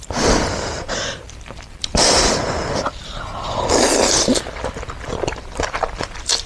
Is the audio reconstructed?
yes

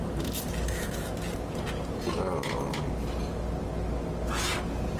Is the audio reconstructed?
no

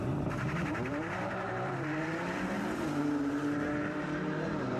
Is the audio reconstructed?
yes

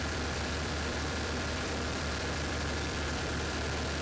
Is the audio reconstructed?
yes